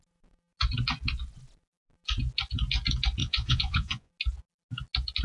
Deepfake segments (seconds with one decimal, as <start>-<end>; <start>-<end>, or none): 3.2-4.1